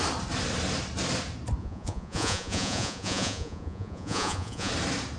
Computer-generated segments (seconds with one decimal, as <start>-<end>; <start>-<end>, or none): 1.6-4.7